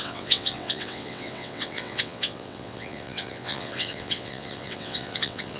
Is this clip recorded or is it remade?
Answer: remade